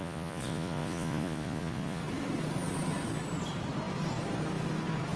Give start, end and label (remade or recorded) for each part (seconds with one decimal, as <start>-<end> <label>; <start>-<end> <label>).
0.0-2.0 remade; 2.0-5.2 recorded